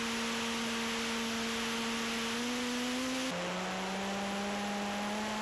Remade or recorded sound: recorded